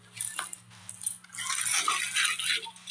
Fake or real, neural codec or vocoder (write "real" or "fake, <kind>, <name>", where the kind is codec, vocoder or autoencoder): real